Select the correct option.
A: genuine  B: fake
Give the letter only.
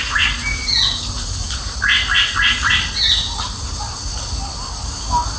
A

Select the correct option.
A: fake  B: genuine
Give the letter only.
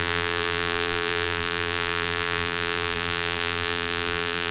A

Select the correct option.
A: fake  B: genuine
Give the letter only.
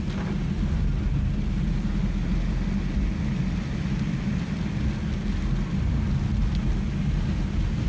B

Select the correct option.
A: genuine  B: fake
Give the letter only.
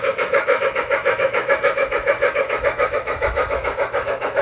B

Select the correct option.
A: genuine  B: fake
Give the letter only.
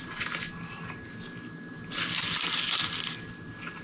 A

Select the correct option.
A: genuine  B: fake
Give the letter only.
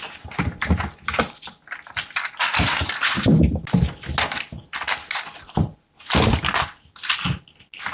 A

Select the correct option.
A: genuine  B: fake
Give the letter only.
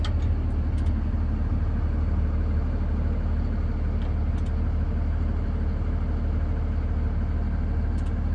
A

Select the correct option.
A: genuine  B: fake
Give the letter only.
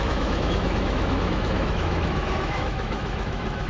B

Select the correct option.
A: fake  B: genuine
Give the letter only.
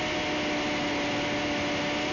B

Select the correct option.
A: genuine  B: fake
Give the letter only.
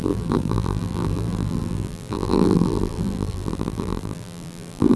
B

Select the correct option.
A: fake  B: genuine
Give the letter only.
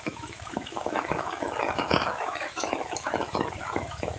A